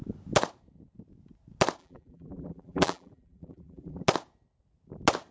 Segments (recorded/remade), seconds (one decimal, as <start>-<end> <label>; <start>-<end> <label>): 0.0-1.8 recorded; 1.8-4.0 remade; 4.0-5.3 recorded